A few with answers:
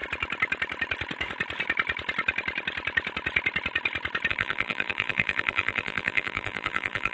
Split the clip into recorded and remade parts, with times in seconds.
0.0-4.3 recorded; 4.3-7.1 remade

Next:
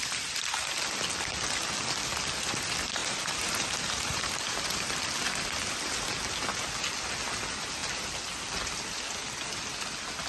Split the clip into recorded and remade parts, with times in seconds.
0.0-3.0 recorded; 3.0-4.9 remade; 4.9-10.3 recorded

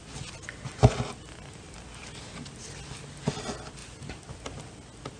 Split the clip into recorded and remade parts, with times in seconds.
0.0-5.2 recorded

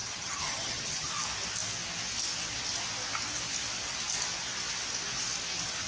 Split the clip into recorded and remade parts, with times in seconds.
0.0-1.1 remade; 1.1-5.9 recorded

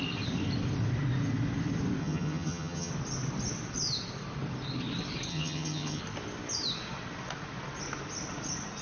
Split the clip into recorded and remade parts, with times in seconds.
0.0-2.0 recorded; 2.0-2.9 remade; 2.9-5.3 recorded; 5.3-6.0 remade; 6.0-8.8 recorded

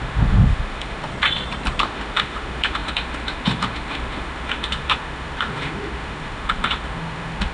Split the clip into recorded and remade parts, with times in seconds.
0.0-1.1 remade; 1.1-1.8 recorded; 1.8-7.5 remade

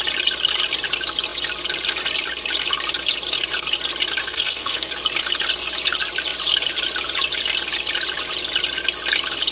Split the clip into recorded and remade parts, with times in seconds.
0.0-4.2 recorded; 4.2-4.9 remade; 4.9-9.5 recorded